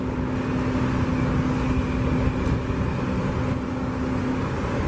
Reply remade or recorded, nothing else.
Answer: recorded